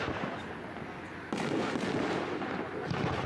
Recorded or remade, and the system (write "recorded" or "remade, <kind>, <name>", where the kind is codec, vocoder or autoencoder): recorded